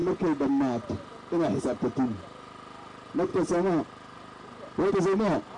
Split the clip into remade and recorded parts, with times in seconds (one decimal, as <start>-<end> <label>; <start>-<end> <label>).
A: 0.0-5.6 recorded

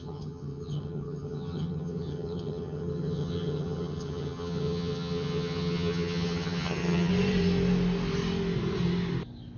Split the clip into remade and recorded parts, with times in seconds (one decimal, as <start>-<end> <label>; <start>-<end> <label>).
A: 0.0-7.1 remade; 7.1-9.6 recorded